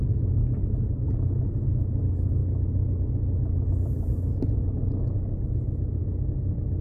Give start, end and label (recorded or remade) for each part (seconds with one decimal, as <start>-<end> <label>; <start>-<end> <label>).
0.0-6.8 recorded